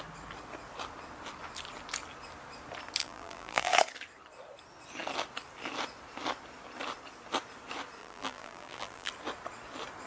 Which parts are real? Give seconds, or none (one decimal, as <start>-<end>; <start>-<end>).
0.0-3.0; 3.7-8.0; 9.1-10.1